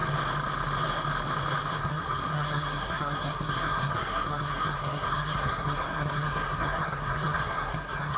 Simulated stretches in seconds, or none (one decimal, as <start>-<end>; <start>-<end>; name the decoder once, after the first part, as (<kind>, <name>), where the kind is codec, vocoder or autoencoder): 1.9-8.2 (codec, SNAC)